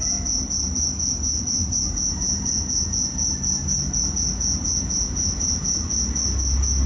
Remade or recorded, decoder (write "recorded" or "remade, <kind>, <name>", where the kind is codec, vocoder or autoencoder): recorded